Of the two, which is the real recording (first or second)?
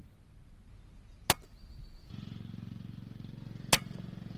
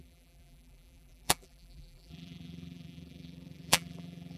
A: first